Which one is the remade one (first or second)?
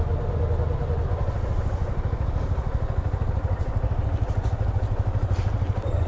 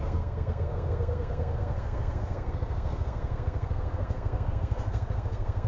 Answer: second